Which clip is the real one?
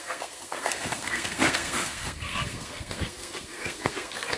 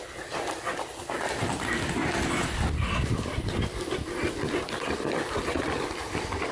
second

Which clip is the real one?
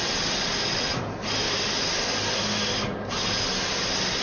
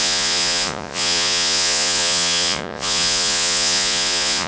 first